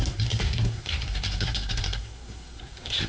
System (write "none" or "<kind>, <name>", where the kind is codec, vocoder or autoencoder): codec, SNAC